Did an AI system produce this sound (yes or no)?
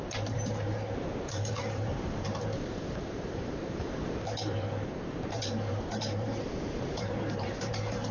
yes